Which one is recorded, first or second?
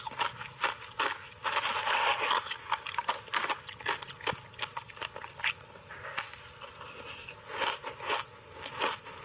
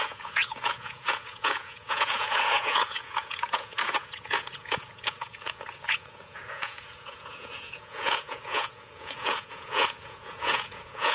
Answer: first